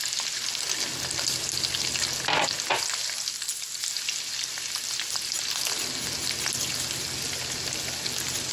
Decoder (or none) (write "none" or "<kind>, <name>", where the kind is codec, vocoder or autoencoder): none